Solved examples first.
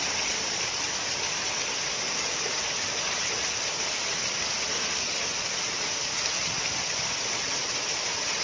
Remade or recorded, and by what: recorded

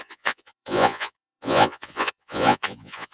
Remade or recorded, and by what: remade, vocoder, Vocos